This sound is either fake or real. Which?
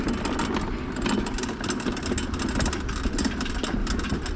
real